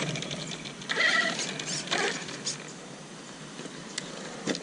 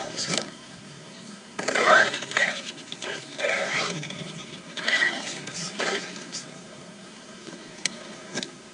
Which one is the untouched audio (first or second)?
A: first